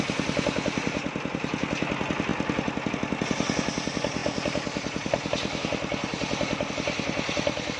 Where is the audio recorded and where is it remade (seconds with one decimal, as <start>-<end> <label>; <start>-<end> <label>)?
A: 0.0-7.8 recorded